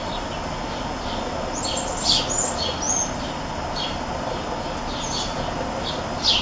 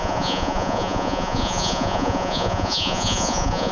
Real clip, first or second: first